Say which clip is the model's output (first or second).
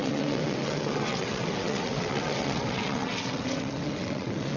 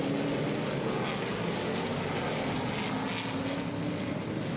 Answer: first